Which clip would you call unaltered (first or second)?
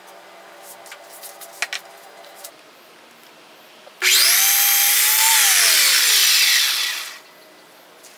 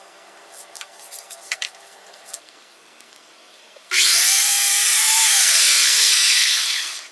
first